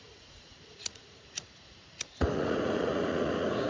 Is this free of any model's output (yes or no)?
no